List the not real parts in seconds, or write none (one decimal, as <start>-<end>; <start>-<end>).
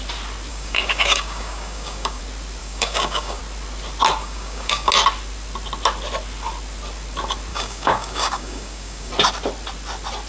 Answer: 0.5-2.2; 2.6-3.4; 4.2-4.9; 7.5-9.1